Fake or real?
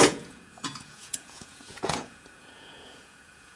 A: fake